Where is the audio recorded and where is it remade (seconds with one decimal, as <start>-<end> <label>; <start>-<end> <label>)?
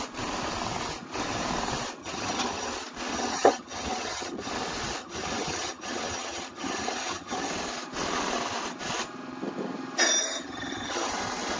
0.0-2.0 recorded; 2.0-2.7 remade; 2.7-3.1 recorded; 3.1-4.5 remade; 4.5-5.0 recorded; 5.0-7.5 remade; 7.5-10.2 recorded; 10.2-11.1 remade; 11.1-11.6 recorded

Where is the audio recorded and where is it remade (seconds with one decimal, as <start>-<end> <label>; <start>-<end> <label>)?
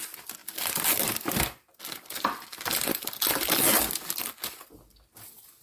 0.0-5.6 recorded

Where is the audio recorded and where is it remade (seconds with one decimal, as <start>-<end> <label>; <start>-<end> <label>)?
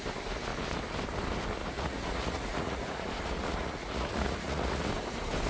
0.0-1.6 recorded; 1.6-4.9 remade; 4.9-5.5 recorded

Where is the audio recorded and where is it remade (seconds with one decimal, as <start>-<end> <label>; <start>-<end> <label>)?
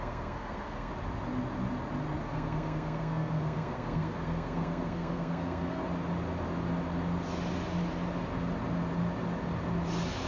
0.0-0.9 remade; 0.9-2.2 recorded; 2.2-5.8 remade; 5.8-10.3 recorded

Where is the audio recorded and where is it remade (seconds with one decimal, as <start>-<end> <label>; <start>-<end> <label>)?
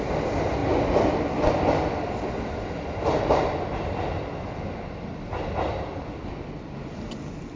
0.0-7.6 recorded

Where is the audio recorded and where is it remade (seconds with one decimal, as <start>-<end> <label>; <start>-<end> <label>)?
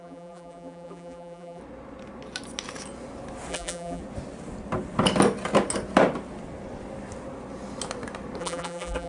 0.0-1.6 remade; 1.6-3.5 recorded; 3.5-4.0 remade; 4.0-8.4 recorded; 8.4-9.1 remade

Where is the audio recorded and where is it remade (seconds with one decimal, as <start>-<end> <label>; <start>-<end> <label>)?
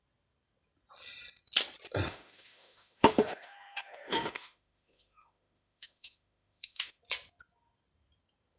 0.0-2.1 recorded; 2.1-7.0 remade; 7.0-8.6 recorded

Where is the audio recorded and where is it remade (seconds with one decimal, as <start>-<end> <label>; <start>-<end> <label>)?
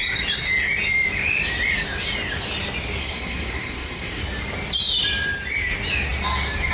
0.0-3.0 recorded; 3.0-4.2 remade; 4.2-6.7 recorded